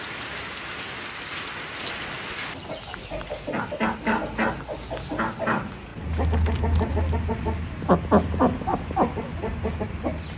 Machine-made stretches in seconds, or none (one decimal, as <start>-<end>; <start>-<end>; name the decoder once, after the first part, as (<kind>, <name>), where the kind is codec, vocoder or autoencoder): none